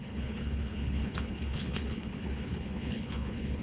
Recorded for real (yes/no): no